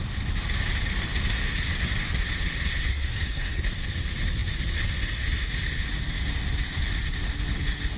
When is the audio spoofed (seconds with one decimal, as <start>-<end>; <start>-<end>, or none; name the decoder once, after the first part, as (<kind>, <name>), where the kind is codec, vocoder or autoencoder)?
2.9-3.6 (codec, SNAC)